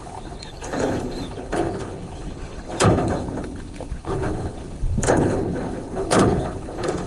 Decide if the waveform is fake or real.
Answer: fake